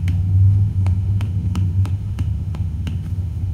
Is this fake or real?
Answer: fake